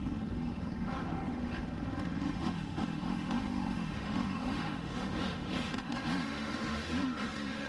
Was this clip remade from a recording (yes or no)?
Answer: yes